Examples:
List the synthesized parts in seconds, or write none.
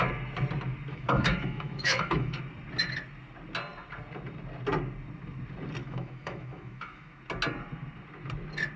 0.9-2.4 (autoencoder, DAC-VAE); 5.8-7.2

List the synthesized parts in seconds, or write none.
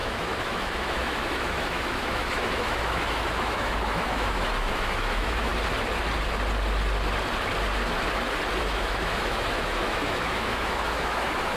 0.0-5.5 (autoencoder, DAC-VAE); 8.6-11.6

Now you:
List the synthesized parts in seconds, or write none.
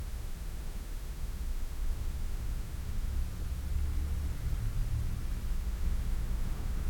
0.0-3.2 (autoencoder, DAC-VAE); 5.5-6.9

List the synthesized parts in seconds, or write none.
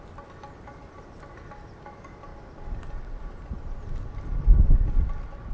none